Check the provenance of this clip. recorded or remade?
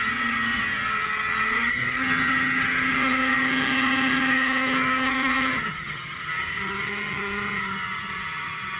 remade